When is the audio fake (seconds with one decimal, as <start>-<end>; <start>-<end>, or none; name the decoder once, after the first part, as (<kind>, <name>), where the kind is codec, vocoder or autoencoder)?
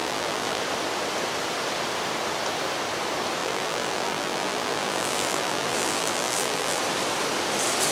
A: 0.0-0.6 (vocoder, BigVGAN v2); 3.4-6.8